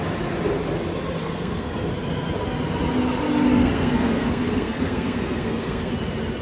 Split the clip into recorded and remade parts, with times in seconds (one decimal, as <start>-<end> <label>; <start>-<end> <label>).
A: 0.0-1.2 recorded; 1.2-1.9 remade; 1.9-3.5 recorded; 3.5-5.9 remade; 5.9-6.4 recorded